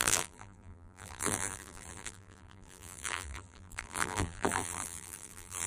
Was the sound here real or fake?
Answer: fake